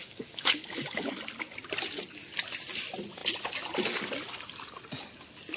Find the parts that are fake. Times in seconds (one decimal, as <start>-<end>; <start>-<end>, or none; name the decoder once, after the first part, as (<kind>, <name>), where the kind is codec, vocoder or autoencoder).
0.0-1.1 (codec, DAC)

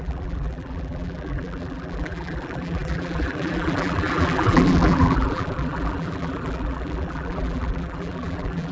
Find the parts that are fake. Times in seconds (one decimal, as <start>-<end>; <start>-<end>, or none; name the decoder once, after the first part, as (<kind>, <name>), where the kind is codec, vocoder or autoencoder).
0.0-8.7 (vocoder, BigVGAN v2)

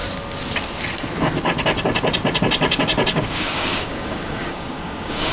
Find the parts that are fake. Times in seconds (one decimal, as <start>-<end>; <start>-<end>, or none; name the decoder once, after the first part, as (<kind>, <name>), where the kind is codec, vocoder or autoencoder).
3.2-5.3 (codec, DAC)

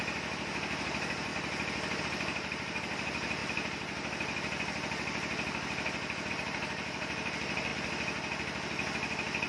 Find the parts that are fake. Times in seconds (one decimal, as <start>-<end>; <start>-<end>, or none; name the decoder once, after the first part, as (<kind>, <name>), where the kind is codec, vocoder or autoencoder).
0.0-1.3 (vocoder, BigVGAN v2); 2.0-3.4; 6.3-7.7

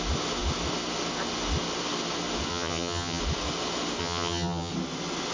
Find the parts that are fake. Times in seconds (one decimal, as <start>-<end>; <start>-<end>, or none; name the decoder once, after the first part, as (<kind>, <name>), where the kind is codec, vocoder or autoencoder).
2.5-3.2 (vocoder, HiFi-GAN); 4.0-4.7

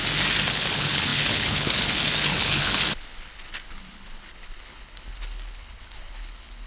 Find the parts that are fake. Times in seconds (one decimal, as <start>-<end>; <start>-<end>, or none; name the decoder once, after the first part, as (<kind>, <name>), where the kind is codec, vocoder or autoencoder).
0.5-6.7 (codec, HILCodec)